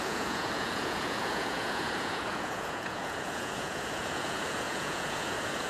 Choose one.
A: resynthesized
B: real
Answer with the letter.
A